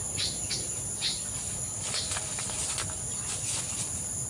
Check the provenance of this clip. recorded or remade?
recorded